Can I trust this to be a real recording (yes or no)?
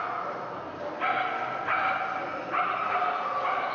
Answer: yes